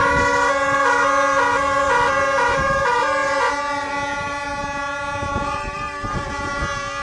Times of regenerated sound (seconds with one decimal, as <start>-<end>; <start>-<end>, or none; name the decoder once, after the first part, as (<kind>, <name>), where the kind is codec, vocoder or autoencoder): none